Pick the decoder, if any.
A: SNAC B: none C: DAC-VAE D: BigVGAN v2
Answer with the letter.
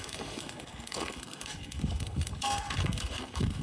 A